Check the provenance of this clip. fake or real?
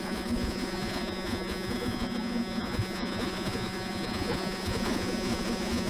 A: fake